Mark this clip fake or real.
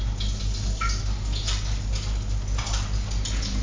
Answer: real